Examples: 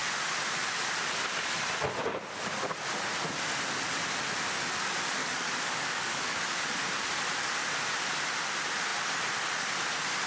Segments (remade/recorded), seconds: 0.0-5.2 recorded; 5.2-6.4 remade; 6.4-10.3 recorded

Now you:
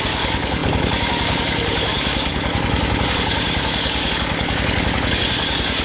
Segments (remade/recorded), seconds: 0.0-5.8 remade

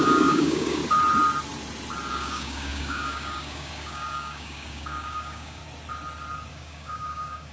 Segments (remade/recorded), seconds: 0.0-0.8 remade; 0.8-2.1 recorded; 2.1-5.6 remade; 5.6-6.5 recorded; 6.5-7.5 remade

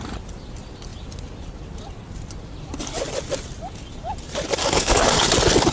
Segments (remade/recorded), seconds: 0.0-4.6 recorded; 4.6-5.3 remade; 5.3-5.7 recorded